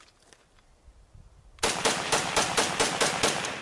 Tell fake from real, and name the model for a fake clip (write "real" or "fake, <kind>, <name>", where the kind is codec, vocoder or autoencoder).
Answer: real